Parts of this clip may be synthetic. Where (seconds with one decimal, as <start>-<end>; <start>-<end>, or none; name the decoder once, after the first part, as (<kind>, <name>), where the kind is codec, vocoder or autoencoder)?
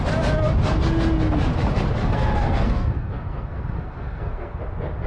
2.0-4.6 (codec, SNAC)